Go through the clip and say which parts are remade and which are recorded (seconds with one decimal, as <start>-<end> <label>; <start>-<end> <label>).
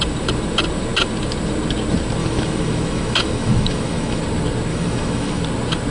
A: 0.0-2.2 recorded; 2.2-4.2 remade; 4.2-4.7 recorded; 4.7-5.4 remade; 5.4-5.9 recorded